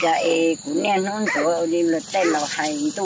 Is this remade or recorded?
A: recorded